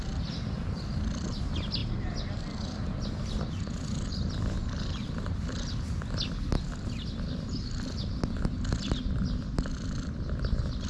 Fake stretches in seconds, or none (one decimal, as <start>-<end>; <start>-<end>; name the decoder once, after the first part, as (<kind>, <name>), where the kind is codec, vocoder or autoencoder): none